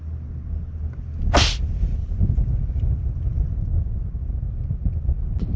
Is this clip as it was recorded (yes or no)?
yes